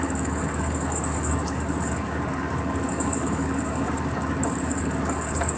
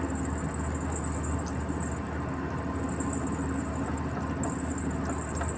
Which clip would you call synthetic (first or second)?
first